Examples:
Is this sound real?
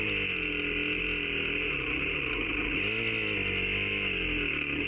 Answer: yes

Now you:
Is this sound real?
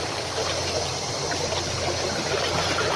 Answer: yes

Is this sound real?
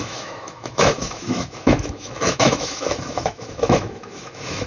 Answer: no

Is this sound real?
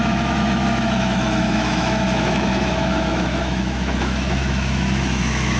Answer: no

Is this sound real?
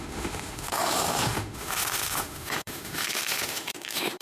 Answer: no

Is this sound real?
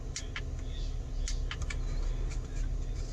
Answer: yes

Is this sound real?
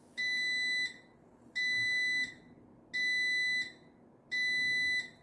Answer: yes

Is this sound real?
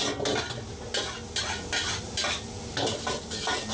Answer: yes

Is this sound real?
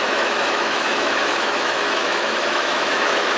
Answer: no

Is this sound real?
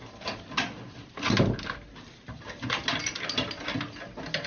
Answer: yes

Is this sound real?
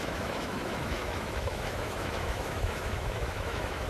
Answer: no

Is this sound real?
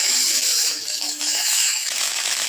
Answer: no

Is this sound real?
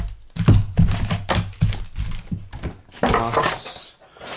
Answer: yes